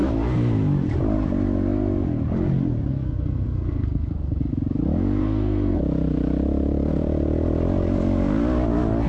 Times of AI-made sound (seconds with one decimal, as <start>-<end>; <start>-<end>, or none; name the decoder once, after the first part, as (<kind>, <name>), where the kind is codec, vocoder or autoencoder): 2.9-4.5 (codec, SNAC); 5.2-5.8